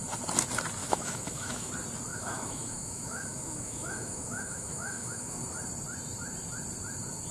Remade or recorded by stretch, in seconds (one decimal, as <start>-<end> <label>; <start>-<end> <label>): 0.0-0.8 recorded; 0.8-1.7 remade; 1.7-2.1 recorded; 2.1-5.4 remade; 5.4-7.3 recorded